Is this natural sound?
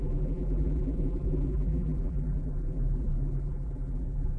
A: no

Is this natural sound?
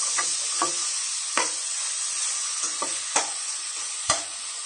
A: no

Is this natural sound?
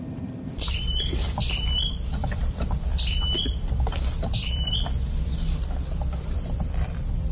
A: no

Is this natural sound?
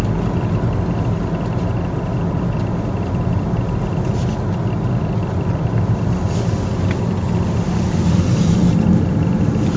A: yes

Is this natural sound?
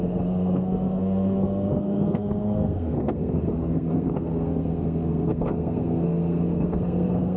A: no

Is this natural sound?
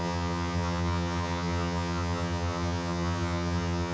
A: no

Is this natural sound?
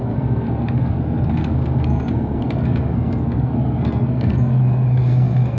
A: no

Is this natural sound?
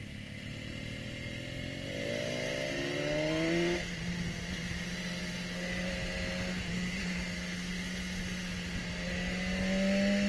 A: yes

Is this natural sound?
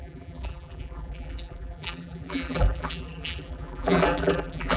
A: no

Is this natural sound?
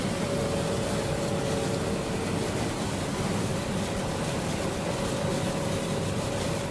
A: no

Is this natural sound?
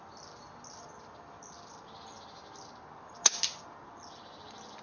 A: yes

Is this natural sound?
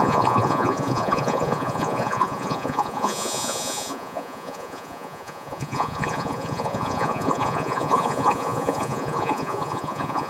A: no